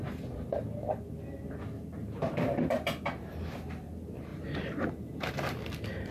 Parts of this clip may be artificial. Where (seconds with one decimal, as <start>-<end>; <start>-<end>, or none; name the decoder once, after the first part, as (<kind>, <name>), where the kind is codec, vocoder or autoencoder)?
2.0-3.3 (vocoder, BigVGAN v2); 4.3-5.3